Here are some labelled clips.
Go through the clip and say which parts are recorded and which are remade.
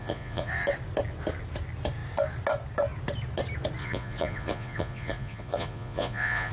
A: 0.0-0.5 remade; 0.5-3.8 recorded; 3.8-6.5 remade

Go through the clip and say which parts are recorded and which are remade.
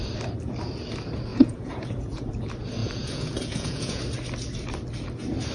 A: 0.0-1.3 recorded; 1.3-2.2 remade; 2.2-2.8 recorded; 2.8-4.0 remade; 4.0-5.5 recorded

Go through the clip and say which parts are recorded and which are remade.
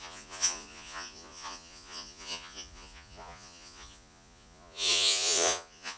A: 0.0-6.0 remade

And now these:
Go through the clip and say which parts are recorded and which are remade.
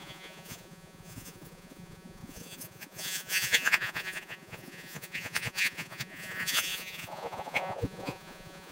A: 0.0-8.7 remade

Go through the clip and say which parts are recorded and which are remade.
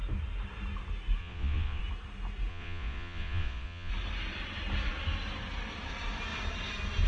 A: 0.0-1.2 recorded; 1.2-1.8 remade; 1.8-2.5 recorded; 2.5-3.9 remade; 3.9-7.1 recorded